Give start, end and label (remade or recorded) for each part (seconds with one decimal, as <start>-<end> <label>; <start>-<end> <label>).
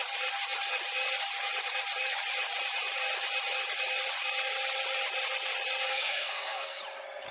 0.0-5.9 recorded; 5.9-6.8 remade; 6.8-7.3 recorded